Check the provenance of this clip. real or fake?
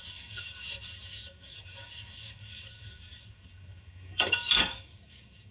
fake